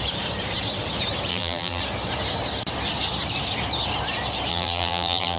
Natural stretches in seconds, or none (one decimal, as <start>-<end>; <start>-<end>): 0.0-1.3; 1.8-4.5